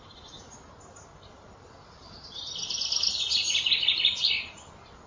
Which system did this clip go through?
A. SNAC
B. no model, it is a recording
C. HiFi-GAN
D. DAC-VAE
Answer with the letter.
B